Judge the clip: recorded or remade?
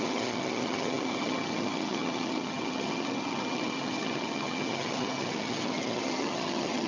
remade